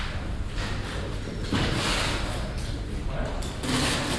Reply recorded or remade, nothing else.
recorded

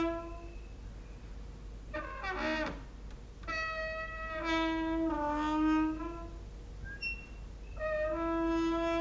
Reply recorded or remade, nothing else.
recorded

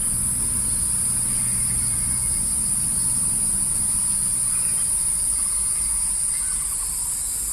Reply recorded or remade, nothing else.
recorded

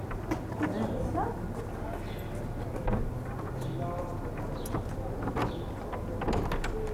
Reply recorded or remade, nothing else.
recorded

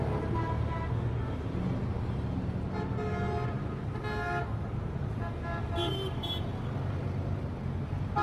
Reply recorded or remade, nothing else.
recorded